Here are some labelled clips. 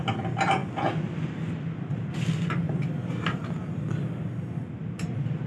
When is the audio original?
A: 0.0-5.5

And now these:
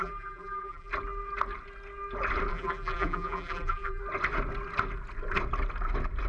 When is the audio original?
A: 0.9-2.5; 4.0-6.3

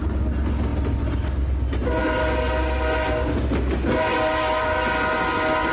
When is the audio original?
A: 0.0-5.7

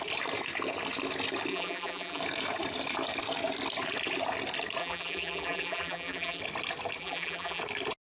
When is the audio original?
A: 0.0-1.5; 2.2-4.8; 6.4-7.0; 7.6-8.1